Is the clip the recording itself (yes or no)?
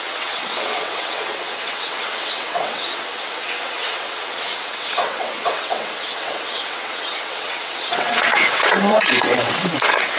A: no